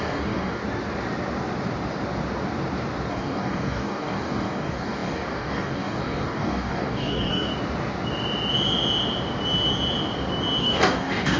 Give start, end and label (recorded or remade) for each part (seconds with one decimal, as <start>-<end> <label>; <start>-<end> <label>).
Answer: 0.0-0.6 remade; 0.6-3.1 recorded; 3.1-7.5 remade; 7.5-10.6 recorded; 10.6-11.4 remade